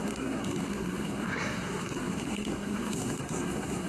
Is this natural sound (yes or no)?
no